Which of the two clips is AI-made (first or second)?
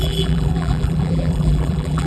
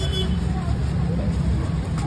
first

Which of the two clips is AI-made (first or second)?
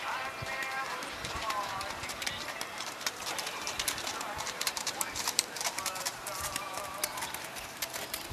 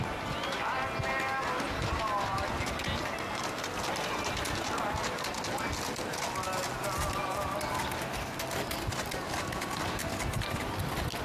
first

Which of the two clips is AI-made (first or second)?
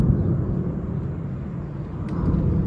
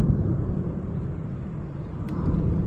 second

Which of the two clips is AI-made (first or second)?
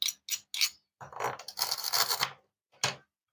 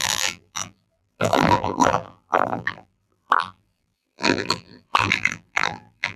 second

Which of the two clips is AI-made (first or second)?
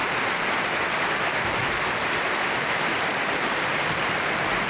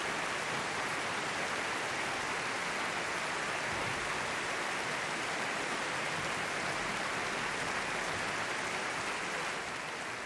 first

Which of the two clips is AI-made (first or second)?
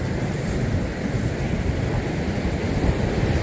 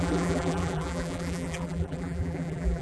second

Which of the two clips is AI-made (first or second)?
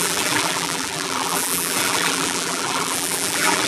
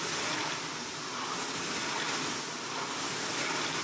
first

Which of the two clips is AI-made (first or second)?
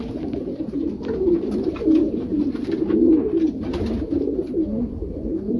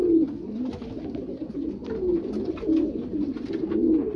first